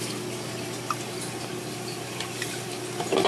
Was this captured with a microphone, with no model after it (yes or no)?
yes